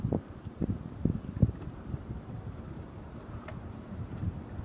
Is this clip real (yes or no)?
no